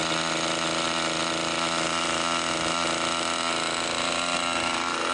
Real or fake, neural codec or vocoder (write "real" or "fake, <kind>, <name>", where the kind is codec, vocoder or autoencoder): real